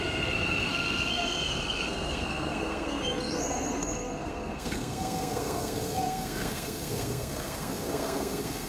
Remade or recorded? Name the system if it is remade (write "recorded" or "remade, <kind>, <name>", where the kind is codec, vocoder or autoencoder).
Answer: remade, codec, SNAC